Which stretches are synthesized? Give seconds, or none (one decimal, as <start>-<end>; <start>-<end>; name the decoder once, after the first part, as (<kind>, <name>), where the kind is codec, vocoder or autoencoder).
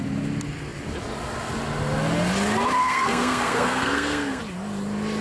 2.8-4.4 (codec, SNAC)